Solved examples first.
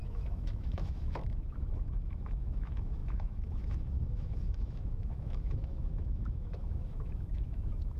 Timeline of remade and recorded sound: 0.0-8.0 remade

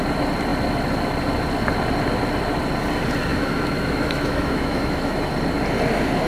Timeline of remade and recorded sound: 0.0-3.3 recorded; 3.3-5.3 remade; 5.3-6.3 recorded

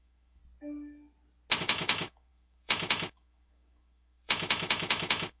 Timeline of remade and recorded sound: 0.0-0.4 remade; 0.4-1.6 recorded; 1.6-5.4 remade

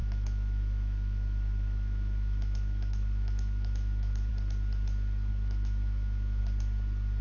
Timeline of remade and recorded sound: 0.0-4.3 remade; 4.3-5.3 recorded; 5.3-6.4 remade; 6.4-7.2 recorded

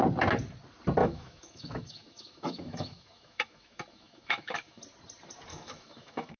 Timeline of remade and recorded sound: 0.0-1.0 recorded; 1.0-4.8 remade; 4.8-5.5 recorded; 5.5-6.4 remade